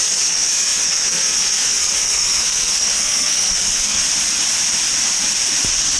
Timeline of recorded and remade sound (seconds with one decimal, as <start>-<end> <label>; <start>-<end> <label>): 0.0-4.0 remade; 4.0-6.0 recorded